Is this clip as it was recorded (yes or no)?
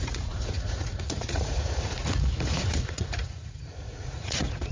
no